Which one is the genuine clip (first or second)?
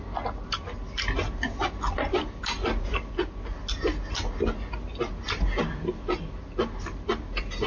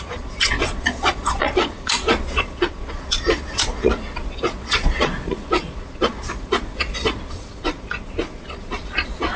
first